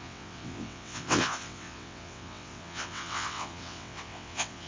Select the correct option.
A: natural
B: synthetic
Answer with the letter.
B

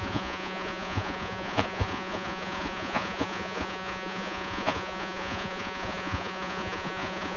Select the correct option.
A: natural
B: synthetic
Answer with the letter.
B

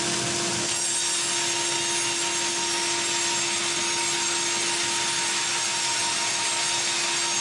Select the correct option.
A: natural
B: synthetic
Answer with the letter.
A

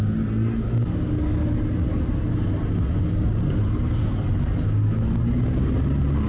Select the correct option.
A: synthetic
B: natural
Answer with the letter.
B